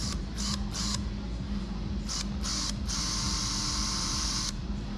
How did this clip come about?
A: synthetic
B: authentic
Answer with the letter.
B